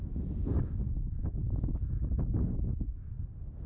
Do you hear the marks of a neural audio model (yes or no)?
no